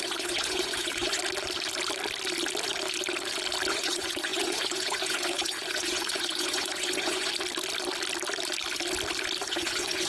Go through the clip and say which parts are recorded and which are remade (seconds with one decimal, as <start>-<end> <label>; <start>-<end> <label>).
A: 0.0-1.2 remade; 1.2-3.7 recorded; 3.7-7.3 remade; 7.3-9.4 recorded; 9.4-10.1 remade